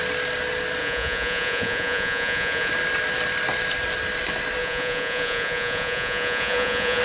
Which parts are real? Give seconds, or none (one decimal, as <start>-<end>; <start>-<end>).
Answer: 0.0-0.8; 2.7-4.6